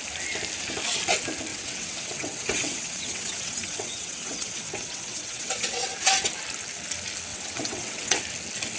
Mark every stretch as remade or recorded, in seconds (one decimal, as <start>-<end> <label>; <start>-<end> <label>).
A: 0.0-1.5 recorded; 1.5-6.3 remade; 6.3-7.3 recorded; 7.3-8.2 remade; 8.2-8.8 recorded